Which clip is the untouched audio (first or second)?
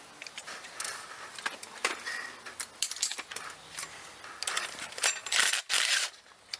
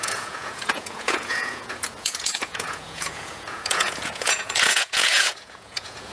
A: first